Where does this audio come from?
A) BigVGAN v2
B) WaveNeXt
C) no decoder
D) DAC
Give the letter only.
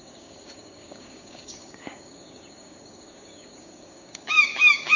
D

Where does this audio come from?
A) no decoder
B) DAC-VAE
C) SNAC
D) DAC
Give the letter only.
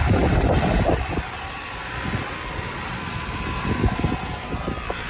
A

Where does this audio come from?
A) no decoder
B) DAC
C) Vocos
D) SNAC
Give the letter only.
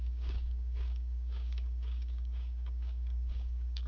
B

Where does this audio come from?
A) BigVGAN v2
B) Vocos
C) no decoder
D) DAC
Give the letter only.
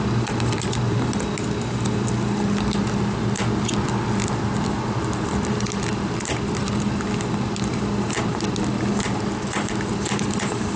C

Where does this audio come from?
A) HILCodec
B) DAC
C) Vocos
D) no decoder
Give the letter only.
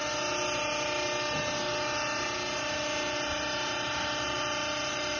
D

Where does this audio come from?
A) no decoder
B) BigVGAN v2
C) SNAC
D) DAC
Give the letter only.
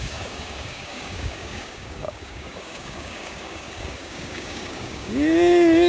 D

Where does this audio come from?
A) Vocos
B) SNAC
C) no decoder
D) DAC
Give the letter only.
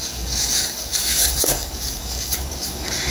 D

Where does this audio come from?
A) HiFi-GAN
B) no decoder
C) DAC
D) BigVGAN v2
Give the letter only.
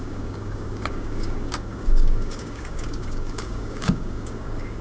C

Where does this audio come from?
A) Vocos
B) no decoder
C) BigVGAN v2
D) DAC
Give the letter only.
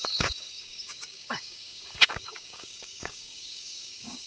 D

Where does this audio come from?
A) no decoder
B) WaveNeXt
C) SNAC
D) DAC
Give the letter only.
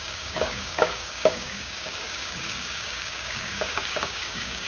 D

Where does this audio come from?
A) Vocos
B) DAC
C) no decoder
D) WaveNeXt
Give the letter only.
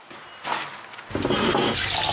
C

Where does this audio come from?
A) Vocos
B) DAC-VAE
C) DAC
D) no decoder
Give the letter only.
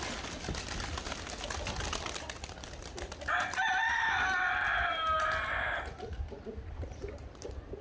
D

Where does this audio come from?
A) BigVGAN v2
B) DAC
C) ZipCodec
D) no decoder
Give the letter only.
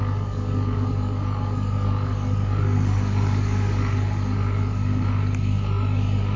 B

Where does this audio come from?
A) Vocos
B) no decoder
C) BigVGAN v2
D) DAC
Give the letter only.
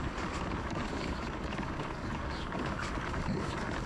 D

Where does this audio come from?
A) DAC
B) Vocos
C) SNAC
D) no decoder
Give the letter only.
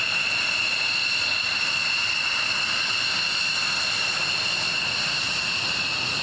D